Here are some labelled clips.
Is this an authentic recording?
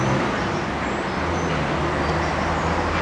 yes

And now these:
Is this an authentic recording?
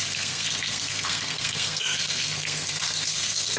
no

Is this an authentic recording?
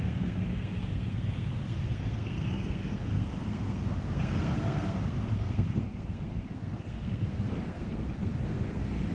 no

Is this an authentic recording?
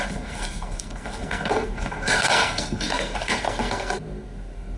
no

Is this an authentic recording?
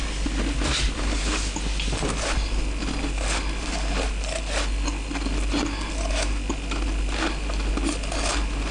yes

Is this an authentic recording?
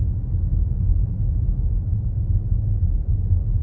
yes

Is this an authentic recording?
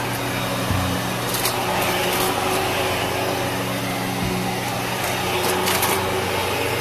yes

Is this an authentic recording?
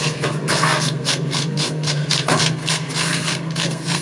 no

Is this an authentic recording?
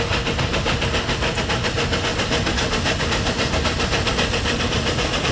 yes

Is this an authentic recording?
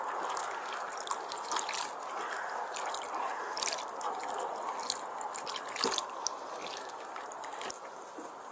yes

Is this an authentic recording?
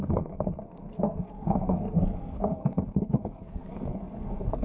no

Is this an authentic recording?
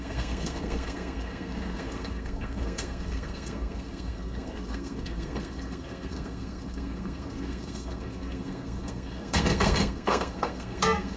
no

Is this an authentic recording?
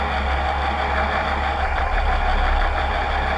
yes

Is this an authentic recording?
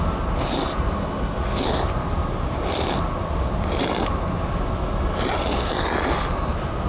yes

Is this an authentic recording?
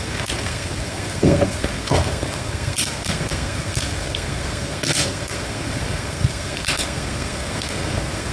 no